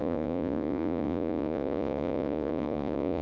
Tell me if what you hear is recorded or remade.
remade